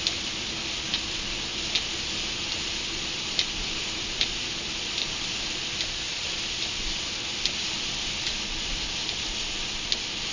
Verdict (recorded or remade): recorded